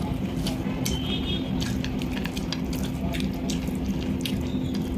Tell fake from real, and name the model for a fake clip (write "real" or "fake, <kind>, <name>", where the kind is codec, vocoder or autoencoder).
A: real